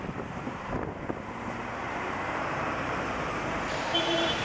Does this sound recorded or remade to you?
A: remade